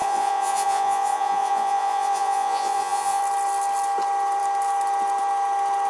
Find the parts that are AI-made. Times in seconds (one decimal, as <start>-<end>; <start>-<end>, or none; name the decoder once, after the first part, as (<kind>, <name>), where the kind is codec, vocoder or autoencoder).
0.0-3.2 (vocoder, Vocos)